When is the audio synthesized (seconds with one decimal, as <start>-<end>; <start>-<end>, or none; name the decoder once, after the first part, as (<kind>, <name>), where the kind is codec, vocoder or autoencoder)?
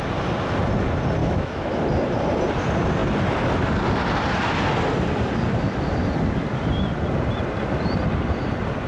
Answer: 1.2-1.8 (autoencoder, DAC-VAE)